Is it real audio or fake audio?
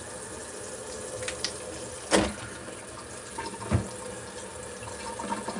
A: real